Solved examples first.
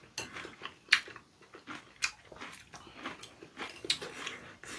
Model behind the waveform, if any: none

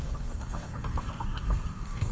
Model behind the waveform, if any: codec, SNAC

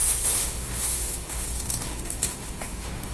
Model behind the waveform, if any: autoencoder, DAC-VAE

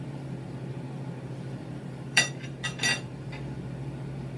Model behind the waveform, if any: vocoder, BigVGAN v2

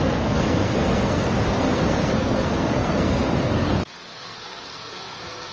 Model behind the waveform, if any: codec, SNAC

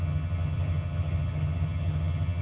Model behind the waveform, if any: vocoder, HiFi-GAN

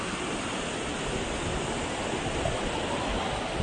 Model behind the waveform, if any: none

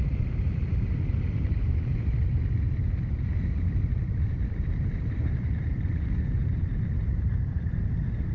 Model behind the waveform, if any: vocoder, BigVGAN v2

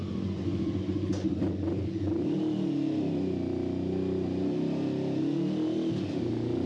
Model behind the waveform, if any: none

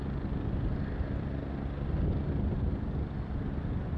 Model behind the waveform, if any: vocoder, BigVGAN v2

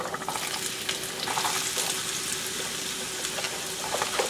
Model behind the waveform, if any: none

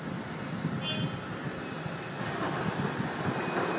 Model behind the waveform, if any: none